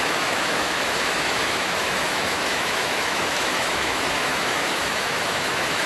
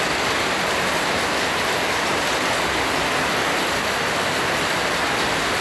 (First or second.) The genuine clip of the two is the second